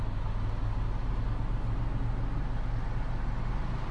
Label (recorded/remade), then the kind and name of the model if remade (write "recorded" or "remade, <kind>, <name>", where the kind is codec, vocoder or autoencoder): recorded